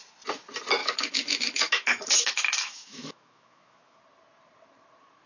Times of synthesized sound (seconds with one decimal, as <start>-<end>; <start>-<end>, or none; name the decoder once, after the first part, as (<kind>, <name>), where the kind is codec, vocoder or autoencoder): 0.8-4.0 (autoencoder, DAC-VAE)